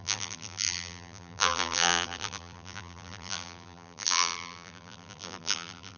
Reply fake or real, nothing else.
fake